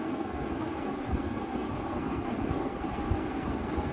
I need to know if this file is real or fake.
fake